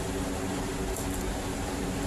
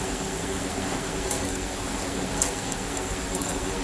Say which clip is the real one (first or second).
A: first